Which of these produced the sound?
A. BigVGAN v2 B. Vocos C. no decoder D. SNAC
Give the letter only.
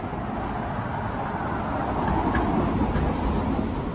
C